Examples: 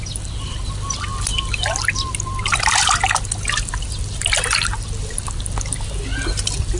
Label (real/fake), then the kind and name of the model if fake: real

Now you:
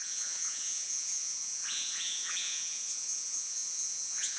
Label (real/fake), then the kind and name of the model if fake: fake, vocoder, Vocos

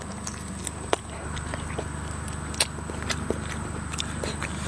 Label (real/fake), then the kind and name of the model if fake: real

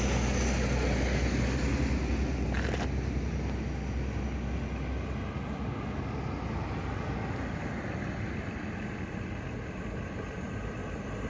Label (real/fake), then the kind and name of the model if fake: real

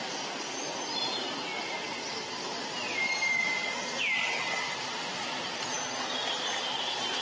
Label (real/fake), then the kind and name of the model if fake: real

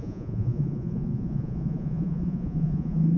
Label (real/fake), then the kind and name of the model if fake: fake, vocoder, Vocos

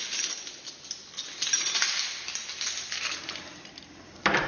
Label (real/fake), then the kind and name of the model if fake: real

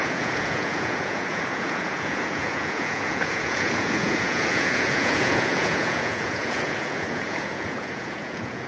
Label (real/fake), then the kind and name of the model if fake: fake, vocoder, Vocos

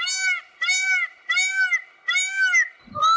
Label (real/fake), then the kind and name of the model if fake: real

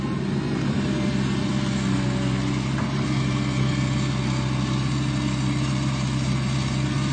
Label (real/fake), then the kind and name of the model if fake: real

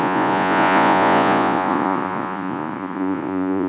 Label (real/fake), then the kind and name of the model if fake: fake, vocoder, Vocos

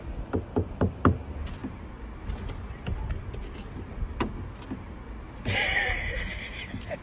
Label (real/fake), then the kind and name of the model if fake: real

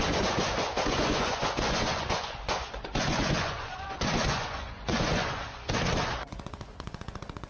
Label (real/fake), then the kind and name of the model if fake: fake, vocoder, Vocos